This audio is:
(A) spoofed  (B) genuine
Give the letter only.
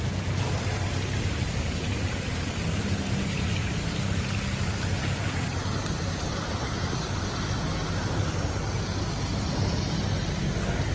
B